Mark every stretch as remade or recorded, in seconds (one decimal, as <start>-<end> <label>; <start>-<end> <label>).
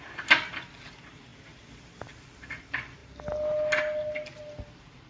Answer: 0.0-1.3 remade; 1.3-2.1 recorded; 2.1-3.0 remade; 3.0-4.4 recorded; 4.4-5.1 remade